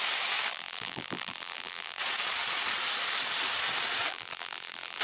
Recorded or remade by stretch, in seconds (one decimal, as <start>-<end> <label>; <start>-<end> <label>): 0.0-0.5 recorded; 0.5-2.0 remade; 2.0-4.1 recorded; 4.1-5.0 remade